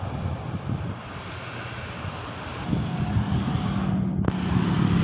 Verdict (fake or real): real